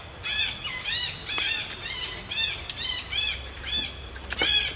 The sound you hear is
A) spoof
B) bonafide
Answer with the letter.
B